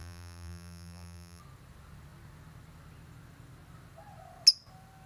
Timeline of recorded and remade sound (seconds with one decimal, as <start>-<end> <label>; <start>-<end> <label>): 0.0-1.4 remade; 1.4-5.1 recorded